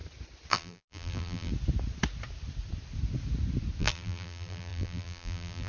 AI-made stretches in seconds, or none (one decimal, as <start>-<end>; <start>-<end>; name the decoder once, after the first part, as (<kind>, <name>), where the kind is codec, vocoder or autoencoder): 0.5-1.5 (vocoder, BigVGAN v2); 3.8-5.7